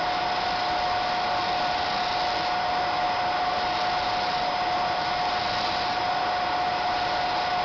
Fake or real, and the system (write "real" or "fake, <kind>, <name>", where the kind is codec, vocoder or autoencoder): real